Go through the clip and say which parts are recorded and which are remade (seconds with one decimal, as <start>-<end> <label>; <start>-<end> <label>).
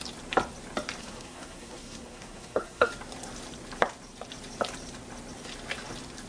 0.0-1.0 recorded; 1.0-2.9 remade; 2.9-6.3 recorded